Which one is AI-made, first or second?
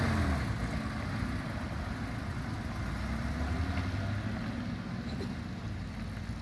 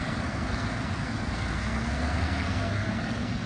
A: second